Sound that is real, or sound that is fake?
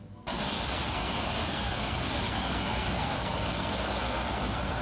fake